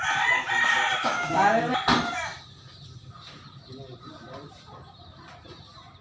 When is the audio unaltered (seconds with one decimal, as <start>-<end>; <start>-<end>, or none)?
0.0-1.0; 1.6-6.0